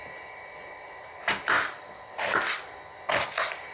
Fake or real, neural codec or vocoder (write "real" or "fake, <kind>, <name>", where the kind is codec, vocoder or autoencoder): real